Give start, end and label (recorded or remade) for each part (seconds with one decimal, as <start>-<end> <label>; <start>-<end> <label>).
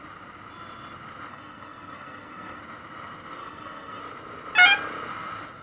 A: 0.0-1.3 recorded; 1.3-2.6 remade; 2.6-3.4 recorded; 3.4-4.0 remade; 4.0-5.6 recorded